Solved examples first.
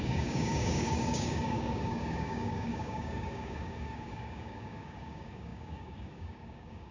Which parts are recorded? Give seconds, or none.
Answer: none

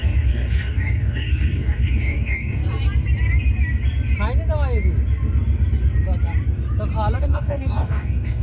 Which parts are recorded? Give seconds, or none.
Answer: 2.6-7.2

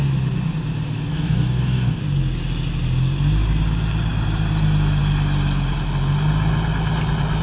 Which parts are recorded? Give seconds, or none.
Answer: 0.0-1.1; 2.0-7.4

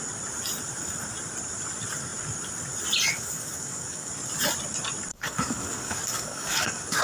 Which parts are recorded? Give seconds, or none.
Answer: 0.0-3.1; 4.1-5.1

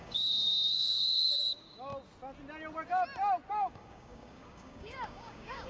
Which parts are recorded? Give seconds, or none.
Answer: 1.9-3.5

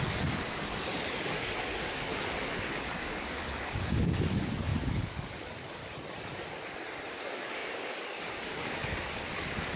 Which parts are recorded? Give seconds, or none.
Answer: 5.8-7.1

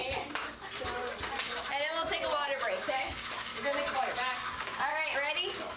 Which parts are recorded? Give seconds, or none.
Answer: 0.0-2.7; 3.5-4.1; 4.9-5.8